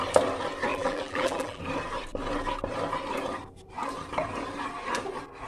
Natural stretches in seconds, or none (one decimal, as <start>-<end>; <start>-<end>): 0.0-0.7; 1.6-5.5